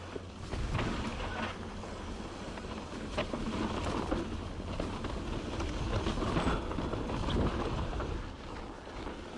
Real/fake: real